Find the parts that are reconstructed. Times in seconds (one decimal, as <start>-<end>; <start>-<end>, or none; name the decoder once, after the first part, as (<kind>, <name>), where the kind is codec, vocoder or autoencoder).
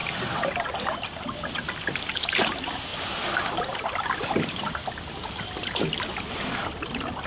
none